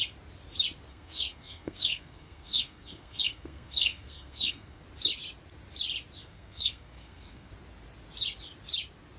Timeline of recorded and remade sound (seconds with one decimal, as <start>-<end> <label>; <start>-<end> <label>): 0.0-0.9 recorded; 0.9-4.8 remade; 4.8-6.3 recorded; 6.3-7.5 remade; 7.5-9.2 recorded

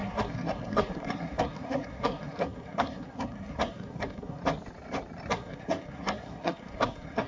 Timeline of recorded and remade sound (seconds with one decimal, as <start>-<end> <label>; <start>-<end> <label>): 0.0-4.4 remade; 4.4-5.3 recorded; 5.3-7.3 remade

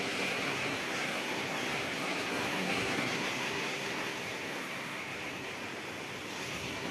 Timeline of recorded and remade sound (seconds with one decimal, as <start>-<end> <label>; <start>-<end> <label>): 0.0-5.5 remade; 5.5-6.4 recorded; 6.4-6.9 remade

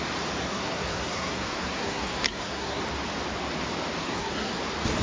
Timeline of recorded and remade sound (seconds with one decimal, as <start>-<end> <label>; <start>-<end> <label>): 0.0-0.4 recorded; 0.4-2.8 remade; 2.8-4.0 recorded; 4.0-4.6 remade; 4.6-5.0 recorded

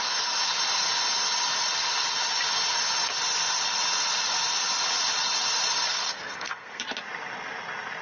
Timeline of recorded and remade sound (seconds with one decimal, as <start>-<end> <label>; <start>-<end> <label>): 0.0-5.9 recorded; 5.9-6.8 remade; 6.8-8.0 recorded

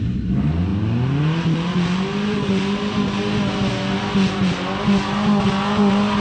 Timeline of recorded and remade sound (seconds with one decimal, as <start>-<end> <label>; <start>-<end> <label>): 0.0-6.2 recorded

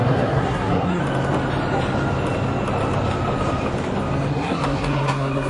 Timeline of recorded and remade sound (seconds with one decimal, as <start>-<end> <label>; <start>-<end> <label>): 0.0-1.0 remade; 1.0-4.3 recorded; 4.3-5.5 remade

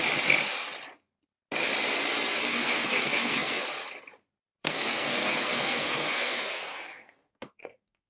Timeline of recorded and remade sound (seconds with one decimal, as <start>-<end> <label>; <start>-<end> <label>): 0.0-2.4 recorded; 2.4-3.6 remade; 3.6-4.6 recorded; 4.6-8.1 remade